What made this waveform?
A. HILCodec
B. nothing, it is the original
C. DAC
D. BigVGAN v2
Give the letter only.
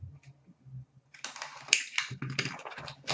B